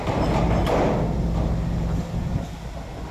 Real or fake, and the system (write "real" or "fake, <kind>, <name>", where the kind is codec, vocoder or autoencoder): real